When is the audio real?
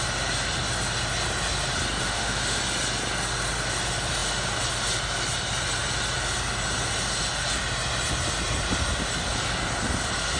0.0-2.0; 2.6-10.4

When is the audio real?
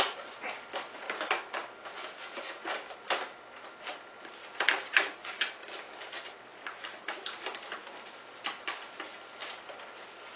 0.0-10.4